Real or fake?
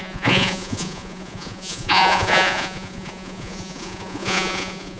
fake